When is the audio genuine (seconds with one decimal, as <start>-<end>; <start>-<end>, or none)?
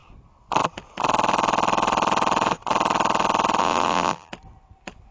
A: 0.0-3.6; 4.3-5.1